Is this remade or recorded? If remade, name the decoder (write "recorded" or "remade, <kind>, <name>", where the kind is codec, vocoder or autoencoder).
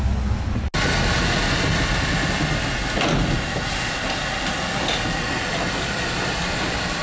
recorded